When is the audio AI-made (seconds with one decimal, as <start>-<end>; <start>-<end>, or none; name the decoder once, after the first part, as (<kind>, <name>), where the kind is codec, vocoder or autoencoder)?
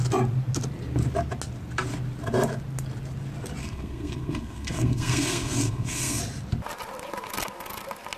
3.6-6.2 (codec, SNAC)